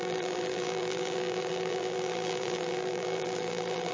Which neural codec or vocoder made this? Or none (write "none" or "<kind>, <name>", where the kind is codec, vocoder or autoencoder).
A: vocoder, BigVGAN v2